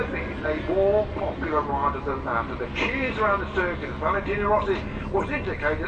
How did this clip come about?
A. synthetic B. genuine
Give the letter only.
B